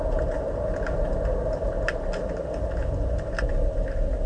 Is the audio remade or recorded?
recorded